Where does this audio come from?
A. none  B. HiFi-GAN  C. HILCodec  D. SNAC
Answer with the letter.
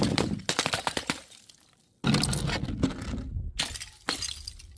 A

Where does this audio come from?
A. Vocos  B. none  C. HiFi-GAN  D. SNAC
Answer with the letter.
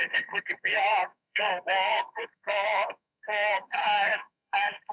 D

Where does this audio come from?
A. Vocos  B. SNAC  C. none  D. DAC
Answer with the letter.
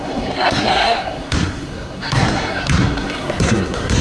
B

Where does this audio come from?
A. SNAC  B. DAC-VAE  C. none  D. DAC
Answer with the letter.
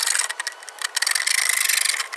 C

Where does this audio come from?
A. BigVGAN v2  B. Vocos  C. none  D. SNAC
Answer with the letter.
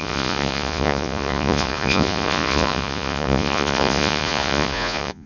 B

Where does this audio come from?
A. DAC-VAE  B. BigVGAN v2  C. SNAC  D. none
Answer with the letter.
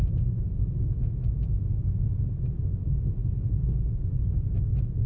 D